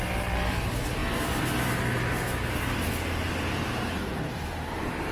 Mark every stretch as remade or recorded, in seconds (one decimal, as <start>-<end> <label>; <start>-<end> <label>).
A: 0.0-5.1 recorded